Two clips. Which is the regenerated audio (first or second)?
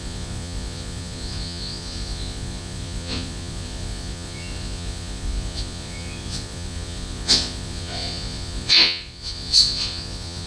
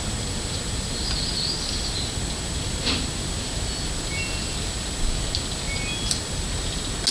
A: first